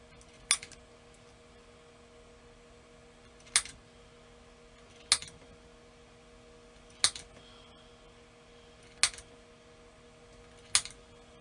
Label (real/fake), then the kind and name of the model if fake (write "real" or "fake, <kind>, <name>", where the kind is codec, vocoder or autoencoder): real